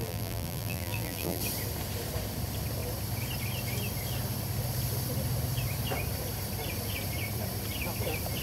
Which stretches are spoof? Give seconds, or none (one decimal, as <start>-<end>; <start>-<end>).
0.0-1.4